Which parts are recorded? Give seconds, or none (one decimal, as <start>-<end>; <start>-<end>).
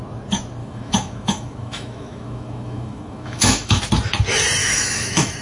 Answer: 0.0-0.6; 3.8-4.6